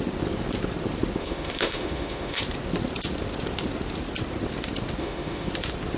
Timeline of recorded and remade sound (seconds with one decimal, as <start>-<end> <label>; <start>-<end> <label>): 0.0-1.2 recorded; 1.2-2.4 remade; 2.4-5.0 recorded; 5.0-5.5 remade; 5.5-6.0 recorded